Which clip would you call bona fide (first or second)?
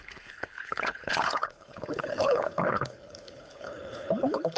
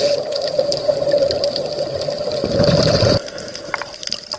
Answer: second